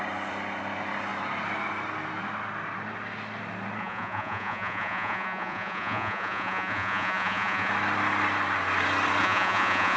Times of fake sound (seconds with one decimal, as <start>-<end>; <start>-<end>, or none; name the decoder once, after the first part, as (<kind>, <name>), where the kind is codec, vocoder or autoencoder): 3.8-7.7 (vocoder, Vocos); 9.2-10.0